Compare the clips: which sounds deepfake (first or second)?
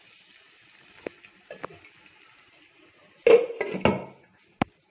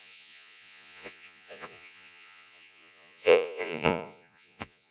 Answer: second